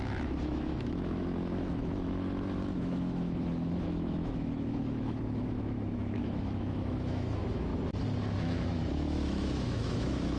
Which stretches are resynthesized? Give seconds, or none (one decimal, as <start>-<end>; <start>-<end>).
0.0-7.7; 8.4-10.4